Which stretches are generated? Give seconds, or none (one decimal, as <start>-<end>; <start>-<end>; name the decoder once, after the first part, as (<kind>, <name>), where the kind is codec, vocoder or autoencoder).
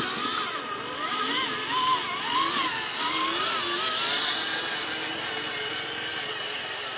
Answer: none